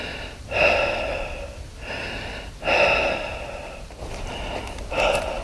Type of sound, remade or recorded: recorded